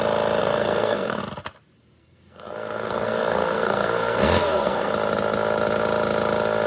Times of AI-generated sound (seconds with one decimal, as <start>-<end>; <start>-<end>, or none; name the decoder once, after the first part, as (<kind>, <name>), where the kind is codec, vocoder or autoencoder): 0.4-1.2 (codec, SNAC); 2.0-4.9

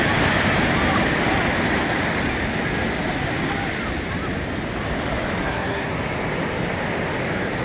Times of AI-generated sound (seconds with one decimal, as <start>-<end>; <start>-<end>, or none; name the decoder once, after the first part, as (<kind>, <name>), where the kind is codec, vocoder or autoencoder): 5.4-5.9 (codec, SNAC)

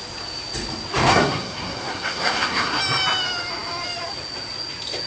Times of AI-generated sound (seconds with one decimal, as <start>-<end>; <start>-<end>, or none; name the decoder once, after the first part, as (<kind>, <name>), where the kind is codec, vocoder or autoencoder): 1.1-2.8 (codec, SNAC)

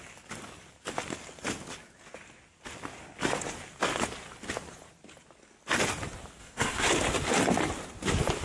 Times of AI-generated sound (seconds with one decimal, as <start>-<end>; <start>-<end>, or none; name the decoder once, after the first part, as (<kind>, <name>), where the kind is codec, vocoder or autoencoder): 6.4-6.9 (codec, SNAC)